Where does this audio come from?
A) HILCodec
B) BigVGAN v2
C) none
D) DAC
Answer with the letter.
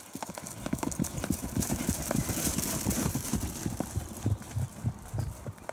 B